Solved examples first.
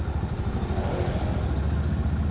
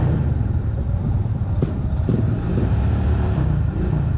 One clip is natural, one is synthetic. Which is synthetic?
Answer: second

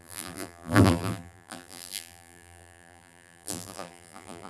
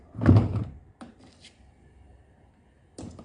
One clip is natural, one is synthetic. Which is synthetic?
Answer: first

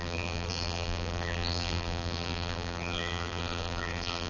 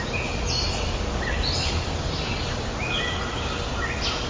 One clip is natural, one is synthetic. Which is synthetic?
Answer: first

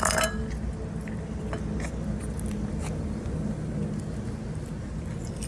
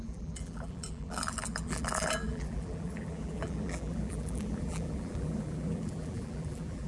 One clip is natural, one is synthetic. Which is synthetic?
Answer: second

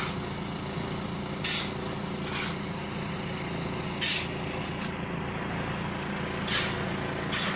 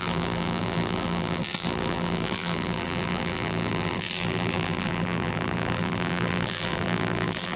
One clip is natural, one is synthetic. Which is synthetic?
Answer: second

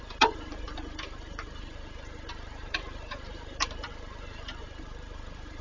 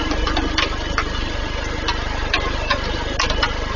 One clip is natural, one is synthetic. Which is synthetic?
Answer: first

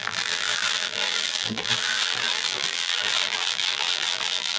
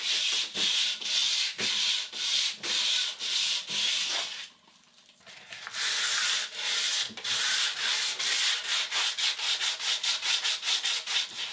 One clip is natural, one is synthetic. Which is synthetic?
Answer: first